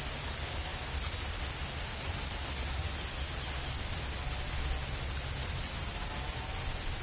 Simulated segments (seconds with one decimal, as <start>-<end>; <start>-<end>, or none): none